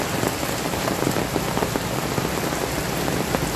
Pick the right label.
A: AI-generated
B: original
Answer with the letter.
B